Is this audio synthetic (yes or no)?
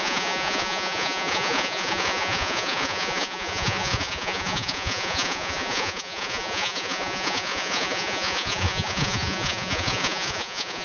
yes